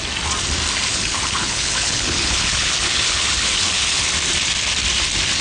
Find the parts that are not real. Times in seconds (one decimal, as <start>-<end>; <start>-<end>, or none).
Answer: 0.9-4.1